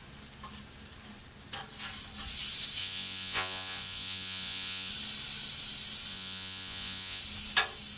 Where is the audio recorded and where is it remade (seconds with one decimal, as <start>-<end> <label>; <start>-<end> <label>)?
0.0-2.8 recorded; 2.8-4.9 remade; 4.9-6.1 recorded; 6.1-7.2 remade; 7.2-8.0 recorded